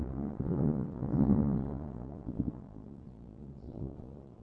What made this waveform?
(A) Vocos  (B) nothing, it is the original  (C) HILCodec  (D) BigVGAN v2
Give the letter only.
A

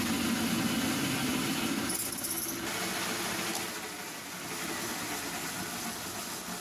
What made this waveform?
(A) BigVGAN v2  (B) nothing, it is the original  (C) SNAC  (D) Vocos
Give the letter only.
B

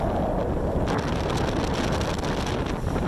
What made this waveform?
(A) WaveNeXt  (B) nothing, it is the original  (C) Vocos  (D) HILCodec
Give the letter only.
B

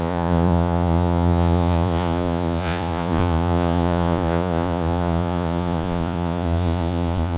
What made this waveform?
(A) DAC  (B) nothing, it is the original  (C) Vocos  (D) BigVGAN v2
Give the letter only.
C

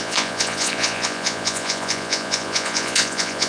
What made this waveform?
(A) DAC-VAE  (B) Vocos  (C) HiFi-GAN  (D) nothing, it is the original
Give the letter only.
B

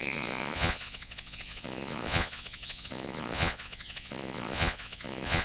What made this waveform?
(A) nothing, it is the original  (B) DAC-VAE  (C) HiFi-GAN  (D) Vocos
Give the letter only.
D